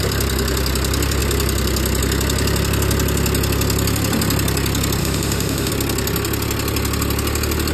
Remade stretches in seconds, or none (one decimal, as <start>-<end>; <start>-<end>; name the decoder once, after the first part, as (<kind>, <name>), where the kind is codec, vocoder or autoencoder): 5.0-5.7 (autoencoder, DAC-VAE)